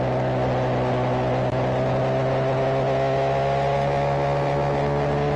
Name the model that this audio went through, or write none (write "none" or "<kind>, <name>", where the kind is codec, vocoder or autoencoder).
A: none